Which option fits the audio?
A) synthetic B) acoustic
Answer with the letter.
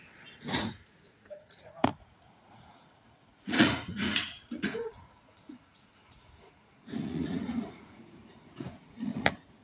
A